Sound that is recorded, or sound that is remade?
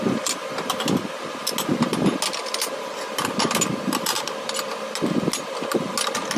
recorded